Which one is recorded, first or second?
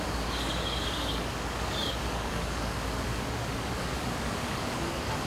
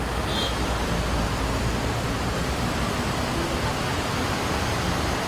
second